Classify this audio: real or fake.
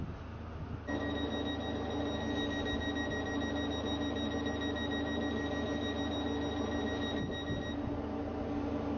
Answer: real